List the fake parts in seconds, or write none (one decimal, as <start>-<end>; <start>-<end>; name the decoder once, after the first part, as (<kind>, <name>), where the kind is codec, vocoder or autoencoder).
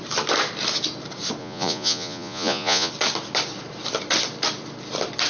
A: 1.4-2.9 (vocoder, Vocos)